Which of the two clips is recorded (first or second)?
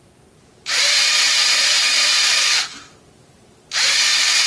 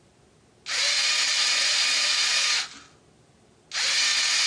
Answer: second